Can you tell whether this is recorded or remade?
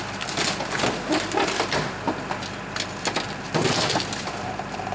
recorded